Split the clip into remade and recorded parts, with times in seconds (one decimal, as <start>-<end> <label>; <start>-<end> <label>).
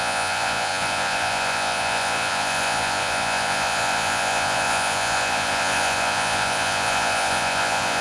0.0-8.0 remade